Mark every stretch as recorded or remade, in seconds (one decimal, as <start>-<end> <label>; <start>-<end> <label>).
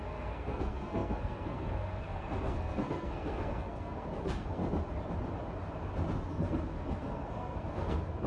0.0-4.6 remade; 4.6-6.3 recorded; 6.3-8.3 remade